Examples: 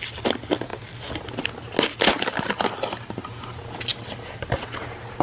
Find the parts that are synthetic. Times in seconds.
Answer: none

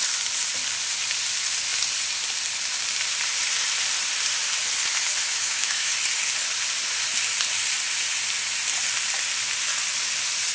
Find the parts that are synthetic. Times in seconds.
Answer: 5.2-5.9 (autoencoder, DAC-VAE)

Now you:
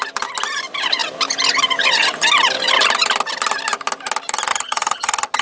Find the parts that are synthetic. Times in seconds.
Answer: 4.5-5.4 (vocoder, HiFi-GAN)

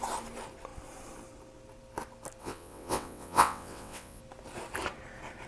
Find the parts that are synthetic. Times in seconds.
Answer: 2.4-4.2 (vocoder, WaveNeXt)